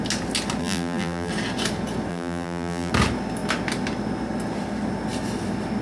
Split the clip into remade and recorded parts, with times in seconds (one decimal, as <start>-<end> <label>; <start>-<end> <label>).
0.0-0.6 recorded; 0.6-1.3 remade; 1.3-2.1 recorded; 2.1-2.9 remade; 2.9-5.8 recorded